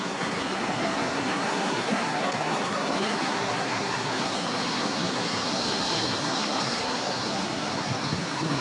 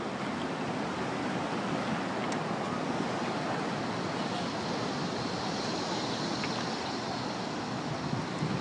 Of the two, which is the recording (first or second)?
second